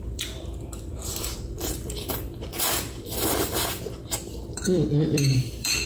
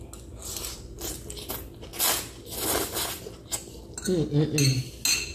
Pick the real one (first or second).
second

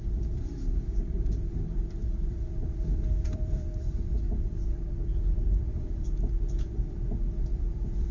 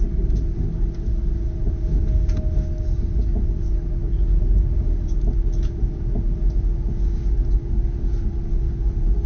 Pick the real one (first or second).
second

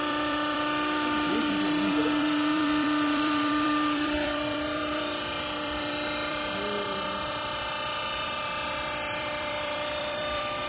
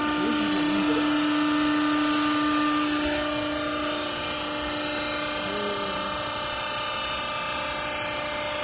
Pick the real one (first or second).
second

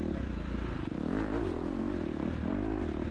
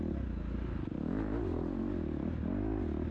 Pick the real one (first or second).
second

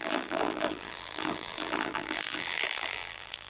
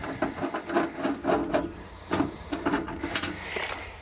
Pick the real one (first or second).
second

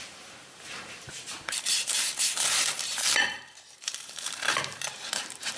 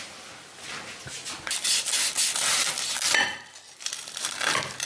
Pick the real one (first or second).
second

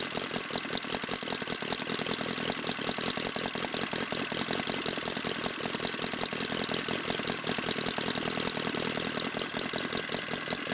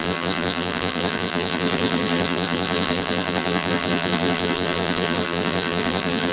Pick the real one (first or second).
first